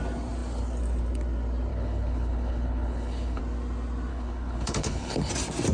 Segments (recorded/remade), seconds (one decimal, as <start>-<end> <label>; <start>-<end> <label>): 0.0-1.7 recorded; 1.7-3.4 remade; 3.4-4.1 recorded; 4.1-5.3 remade; 5.3-5.7 recorded